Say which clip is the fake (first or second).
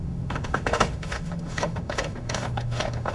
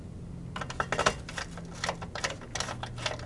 first